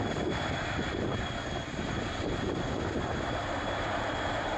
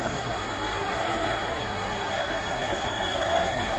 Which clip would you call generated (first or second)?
second